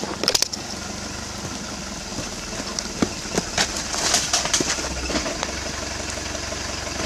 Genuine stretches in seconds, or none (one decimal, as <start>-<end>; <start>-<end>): 0.0-7.1